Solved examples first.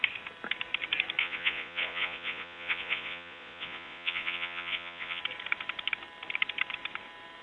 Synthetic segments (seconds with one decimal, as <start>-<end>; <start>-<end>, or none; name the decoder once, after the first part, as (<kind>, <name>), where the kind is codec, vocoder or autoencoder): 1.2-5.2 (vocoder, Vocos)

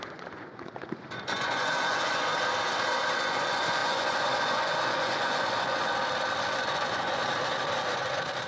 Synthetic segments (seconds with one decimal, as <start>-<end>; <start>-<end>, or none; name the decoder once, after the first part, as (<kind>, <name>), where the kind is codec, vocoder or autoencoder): 0.0-2.3 (vocoder, Vocos); 3.2-5.9; 6.4-7.2; 7.7-8.5

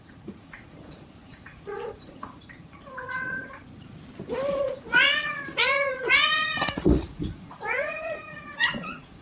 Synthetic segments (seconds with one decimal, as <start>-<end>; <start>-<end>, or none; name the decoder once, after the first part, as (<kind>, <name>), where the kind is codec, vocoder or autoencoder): 0.0-3.6 (vocoder, Vocos); 4.5-9.2

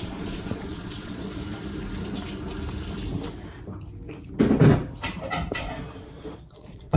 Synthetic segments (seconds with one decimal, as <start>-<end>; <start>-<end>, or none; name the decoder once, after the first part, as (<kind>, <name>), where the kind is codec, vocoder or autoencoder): 0.0-1.4 (vocoder, Vocos); 5.5-7.0

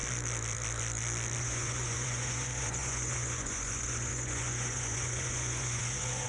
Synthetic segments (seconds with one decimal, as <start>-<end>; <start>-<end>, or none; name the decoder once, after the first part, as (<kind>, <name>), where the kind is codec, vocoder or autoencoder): 1.4-6.3 (vocoder, Vocos)